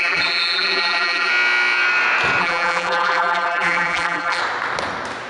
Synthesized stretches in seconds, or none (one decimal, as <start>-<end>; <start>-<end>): 0.0-1.3; 2.4-4.4

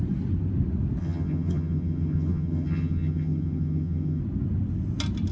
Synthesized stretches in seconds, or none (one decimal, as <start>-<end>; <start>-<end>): 1.0-4.2

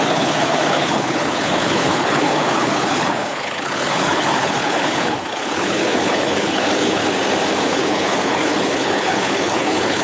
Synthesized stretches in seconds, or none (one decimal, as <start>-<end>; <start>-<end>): 0.0-7.0; 7.6-10.0

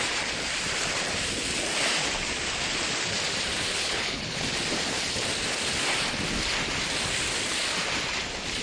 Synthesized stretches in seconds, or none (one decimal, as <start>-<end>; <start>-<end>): 3.7-4.4